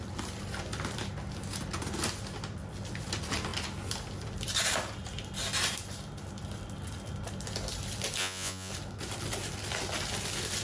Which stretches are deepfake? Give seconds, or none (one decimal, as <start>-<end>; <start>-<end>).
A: 8.2-8.7

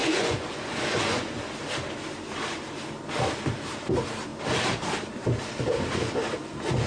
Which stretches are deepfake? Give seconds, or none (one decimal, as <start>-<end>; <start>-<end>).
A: 0.0-1.4

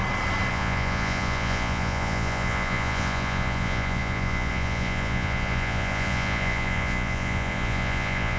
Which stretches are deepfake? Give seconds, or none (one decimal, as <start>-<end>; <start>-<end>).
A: 0.5-8.4